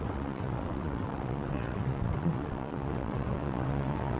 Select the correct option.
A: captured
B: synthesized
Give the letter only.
B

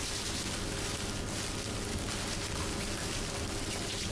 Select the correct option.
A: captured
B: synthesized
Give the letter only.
A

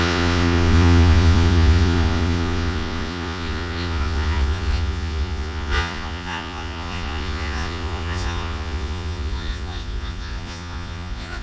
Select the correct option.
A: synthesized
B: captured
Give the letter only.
A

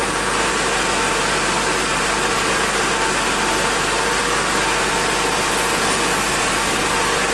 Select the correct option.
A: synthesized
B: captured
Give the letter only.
B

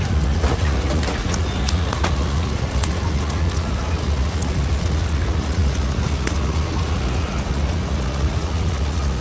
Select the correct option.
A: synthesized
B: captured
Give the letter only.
A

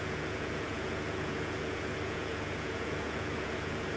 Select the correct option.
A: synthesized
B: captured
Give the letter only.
A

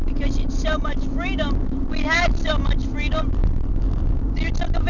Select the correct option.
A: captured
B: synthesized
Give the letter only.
A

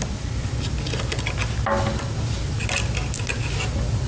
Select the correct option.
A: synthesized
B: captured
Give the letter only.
B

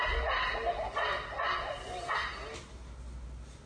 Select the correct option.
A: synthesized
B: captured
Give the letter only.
B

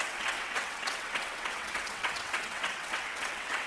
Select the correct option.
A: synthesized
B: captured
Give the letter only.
A